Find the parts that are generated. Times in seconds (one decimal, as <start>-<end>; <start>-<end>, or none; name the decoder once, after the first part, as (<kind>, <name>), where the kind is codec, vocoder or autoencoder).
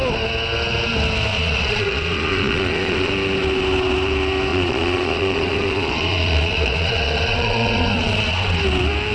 1.3-3.1 (vocoder, Vocos); 4.5-8.6